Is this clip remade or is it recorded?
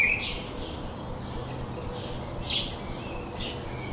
recorded